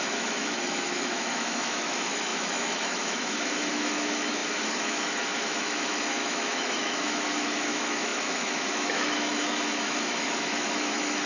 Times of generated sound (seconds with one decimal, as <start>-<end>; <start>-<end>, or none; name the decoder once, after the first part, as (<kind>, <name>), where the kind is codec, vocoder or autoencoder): 0.0-11.3 (autoencoder, DAC-VAE)